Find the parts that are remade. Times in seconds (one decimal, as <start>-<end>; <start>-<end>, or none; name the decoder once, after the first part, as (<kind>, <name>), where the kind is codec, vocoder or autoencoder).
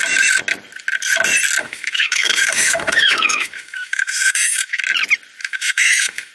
1.6-4.8 (autoencoder, DAC-VAE); 5.4-6.3